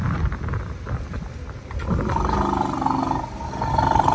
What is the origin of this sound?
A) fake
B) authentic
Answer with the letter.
B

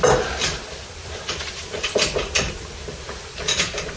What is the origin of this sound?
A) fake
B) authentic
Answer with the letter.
A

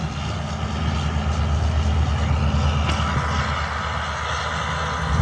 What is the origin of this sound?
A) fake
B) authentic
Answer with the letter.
B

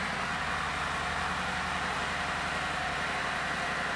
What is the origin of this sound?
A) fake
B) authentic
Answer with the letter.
B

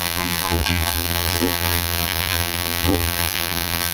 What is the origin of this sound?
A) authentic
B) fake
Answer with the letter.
B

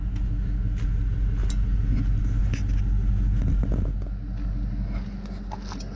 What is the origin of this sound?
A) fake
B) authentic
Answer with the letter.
B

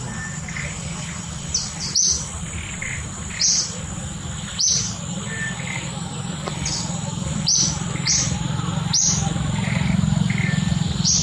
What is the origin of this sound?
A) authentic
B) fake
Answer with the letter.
A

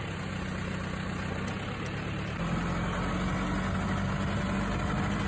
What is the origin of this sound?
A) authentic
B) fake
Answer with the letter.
A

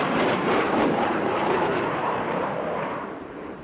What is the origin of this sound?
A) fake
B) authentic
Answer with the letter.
A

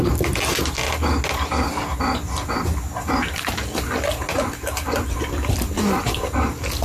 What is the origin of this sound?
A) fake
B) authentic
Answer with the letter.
B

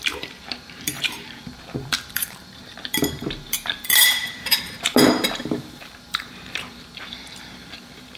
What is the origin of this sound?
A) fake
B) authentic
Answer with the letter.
A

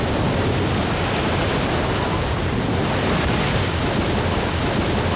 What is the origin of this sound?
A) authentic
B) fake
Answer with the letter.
A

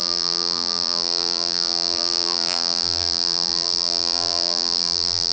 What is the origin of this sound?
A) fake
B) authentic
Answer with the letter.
A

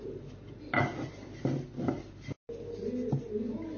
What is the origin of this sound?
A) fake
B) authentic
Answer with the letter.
B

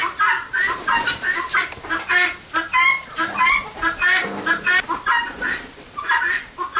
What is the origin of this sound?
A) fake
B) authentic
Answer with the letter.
B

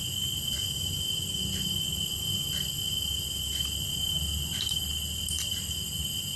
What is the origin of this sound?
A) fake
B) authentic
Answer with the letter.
B